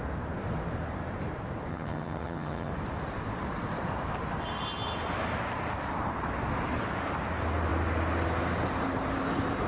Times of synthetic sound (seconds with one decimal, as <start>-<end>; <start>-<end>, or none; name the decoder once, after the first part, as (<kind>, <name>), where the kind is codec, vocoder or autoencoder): 1.7-2.7 (vocoder, HiFi-GAN)